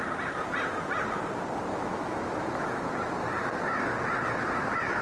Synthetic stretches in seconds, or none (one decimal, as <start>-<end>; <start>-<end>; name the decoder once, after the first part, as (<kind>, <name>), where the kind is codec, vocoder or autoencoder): 1.7-2.8 (autoencoder, DAC-VAE)